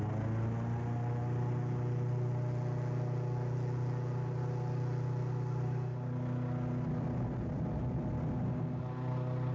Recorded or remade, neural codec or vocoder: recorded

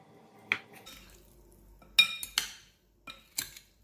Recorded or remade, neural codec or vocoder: recorded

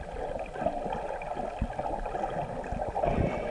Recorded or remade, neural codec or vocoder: recorded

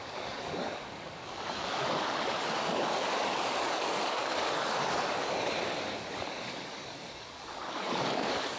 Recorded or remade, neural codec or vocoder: remade, codec, DAC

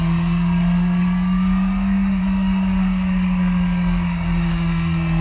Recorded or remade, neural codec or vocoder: remade, codec, DAC